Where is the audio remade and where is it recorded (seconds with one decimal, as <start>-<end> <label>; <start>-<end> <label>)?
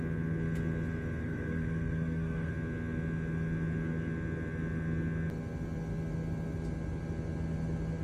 0.0-1.2 recorded; 1.2-2.5 remade; 2.5-8.0 recorded